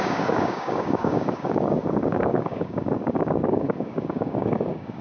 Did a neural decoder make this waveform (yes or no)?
yes